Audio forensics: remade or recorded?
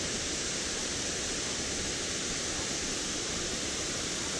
recorded